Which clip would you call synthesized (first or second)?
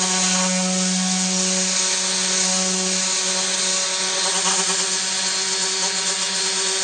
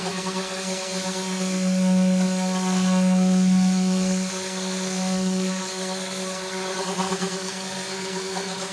second